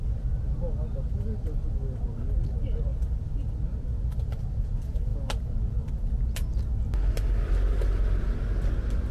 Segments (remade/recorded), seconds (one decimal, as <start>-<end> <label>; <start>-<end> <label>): 0.0-9.1 recorded